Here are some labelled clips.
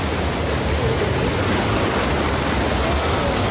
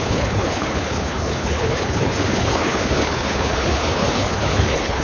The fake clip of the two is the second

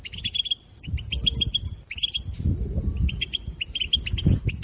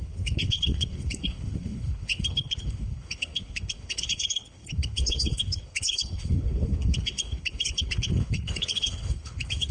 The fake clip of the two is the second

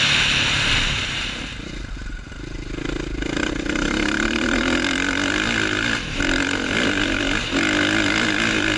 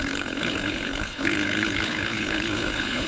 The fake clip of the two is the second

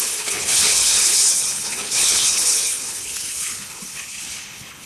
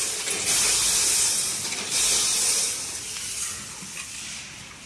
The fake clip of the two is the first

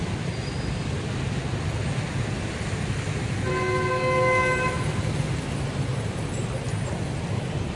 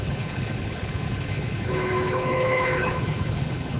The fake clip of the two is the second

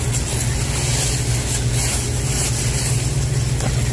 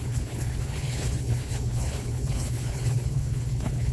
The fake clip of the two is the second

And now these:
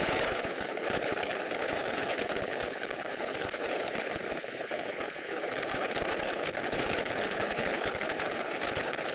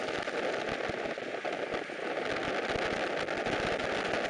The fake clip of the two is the first